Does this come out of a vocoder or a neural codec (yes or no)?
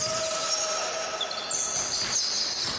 no